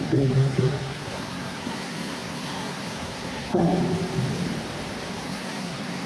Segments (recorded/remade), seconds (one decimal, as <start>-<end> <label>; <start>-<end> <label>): 0.0-3.8 remade; 3.8-5.1 recorded; 5.1-6.1 remade